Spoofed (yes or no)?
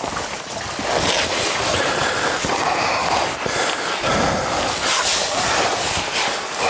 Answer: no